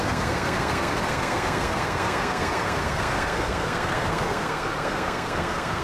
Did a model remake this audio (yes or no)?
yes